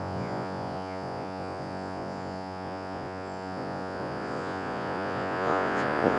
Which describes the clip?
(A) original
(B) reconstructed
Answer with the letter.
B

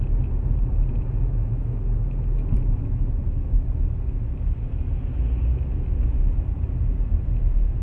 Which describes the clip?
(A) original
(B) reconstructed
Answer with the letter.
A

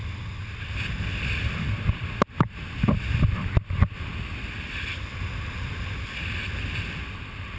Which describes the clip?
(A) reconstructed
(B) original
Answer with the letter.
B